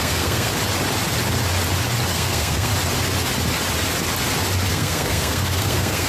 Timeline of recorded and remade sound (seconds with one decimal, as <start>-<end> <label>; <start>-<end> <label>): 0.0-0.5 remade; 0.5-2.1 recorded; 2.1-2.7 remade; 2.7-4.7 recorded; 4.7-6.1 remade

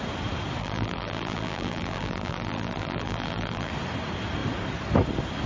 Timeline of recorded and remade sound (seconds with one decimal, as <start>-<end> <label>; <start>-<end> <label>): 0.0-0.6 recorded; 0.6-3.7 remade; 3.7-5.5 recorded

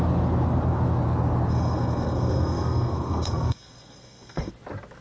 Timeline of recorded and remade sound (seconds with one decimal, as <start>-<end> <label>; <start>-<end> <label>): 0.0-1.5 recorded; 1.5-4.5 remade; 4.5-5.0 recorded

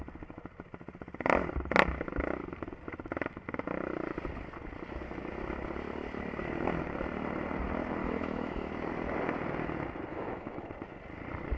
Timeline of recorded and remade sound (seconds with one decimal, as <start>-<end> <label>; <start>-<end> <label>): 0.0-8.0 recorded; 8.0-8.7 remade; 8.7-10.1 recorded; 10.1-10.7 remade; 10.7-11.6 recorded

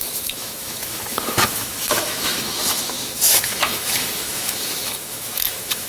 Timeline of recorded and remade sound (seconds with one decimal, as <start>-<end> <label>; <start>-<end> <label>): 0.0-5.9 remade

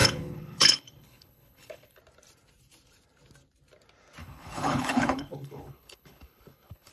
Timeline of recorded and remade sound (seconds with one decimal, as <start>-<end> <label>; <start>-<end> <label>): 0.0-2.0 remade; 2.0-4.2 recorded; 4.2-6.9 remade